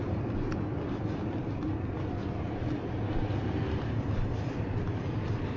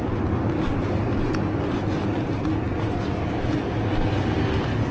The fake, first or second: first